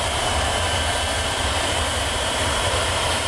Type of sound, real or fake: fake